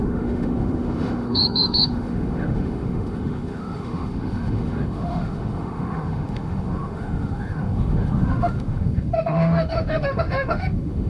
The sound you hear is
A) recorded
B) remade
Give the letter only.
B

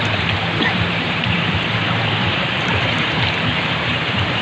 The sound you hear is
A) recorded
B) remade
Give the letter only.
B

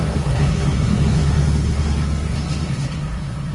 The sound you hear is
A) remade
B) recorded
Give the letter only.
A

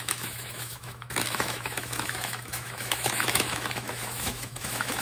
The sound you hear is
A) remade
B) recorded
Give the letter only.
A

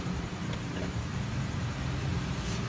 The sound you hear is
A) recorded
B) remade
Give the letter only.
B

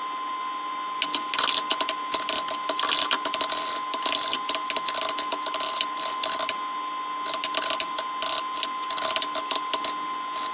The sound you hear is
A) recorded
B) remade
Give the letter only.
A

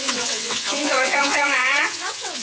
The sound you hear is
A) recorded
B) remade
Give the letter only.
B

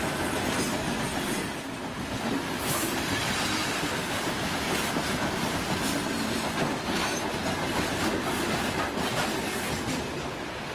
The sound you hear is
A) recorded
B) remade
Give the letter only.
A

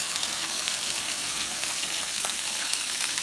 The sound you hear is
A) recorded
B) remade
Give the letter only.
B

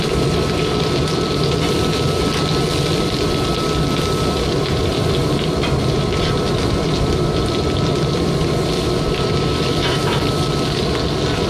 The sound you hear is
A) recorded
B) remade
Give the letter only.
A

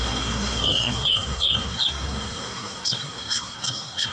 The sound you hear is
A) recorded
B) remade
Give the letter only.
B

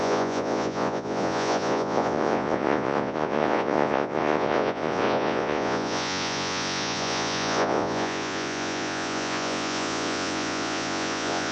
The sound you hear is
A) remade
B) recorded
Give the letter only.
A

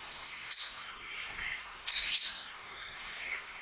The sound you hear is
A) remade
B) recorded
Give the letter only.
A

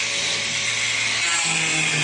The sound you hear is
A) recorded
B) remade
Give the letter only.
A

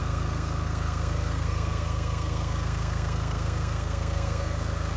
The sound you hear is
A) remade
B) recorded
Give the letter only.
A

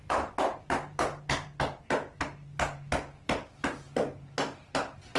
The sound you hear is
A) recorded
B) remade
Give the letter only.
A